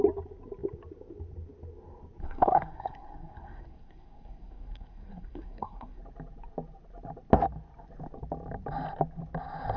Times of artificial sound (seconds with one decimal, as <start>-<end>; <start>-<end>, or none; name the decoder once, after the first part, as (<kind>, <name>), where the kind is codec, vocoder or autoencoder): 2.2-6.0 (codec, SNAC)

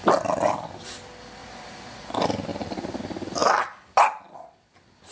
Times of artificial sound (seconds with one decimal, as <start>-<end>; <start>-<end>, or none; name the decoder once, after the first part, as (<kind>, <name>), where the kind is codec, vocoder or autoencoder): 1.4-2.1 (vocoder, BigVGAN v2); 2.5-3.0

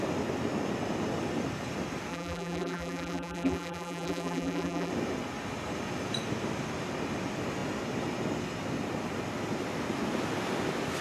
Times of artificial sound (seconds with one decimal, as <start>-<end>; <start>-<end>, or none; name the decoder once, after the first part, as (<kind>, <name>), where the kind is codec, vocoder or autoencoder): 2.1-4.9 (vocoder, BigVGAN v2)

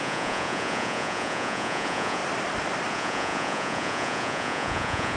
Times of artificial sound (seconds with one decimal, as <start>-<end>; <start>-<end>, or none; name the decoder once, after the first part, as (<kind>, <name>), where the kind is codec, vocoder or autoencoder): 0.0-2.2 (vocoder, Vocos); 2.9-5.2